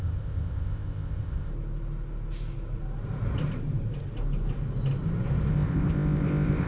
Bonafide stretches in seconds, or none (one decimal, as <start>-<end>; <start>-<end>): 1.5-5.5